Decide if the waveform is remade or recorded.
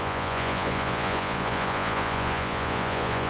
remade